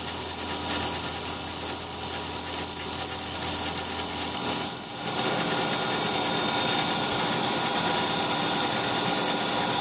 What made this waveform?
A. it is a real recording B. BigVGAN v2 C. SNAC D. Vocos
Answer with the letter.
A